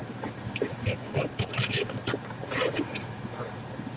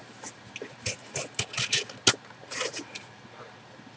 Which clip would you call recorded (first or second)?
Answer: second